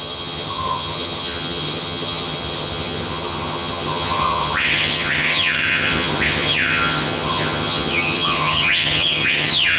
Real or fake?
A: fake